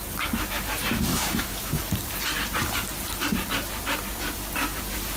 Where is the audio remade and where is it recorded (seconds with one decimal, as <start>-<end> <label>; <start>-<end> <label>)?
0.0-1.1 recorded; 1.1-1.8 remade; 1.8-5.2 recorded